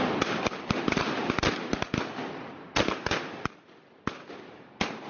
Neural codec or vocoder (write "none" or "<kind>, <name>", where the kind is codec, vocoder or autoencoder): none